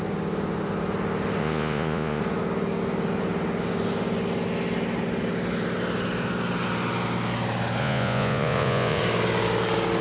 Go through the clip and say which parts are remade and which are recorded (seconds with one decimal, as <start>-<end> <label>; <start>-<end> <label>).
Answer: 0.0-1.4 recorded; 1.4-2.2 remade; 2.2-7.8 recorded; 7.8-9.0 remade; 9.0-10.0 recorded